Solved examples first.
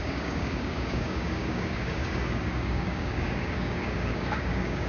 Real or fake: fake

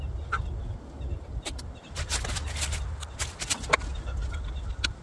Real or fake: real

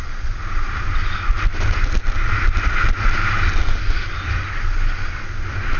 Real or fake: real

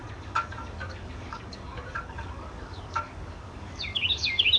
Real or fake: fake